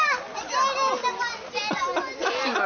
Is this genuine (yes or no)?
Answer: yes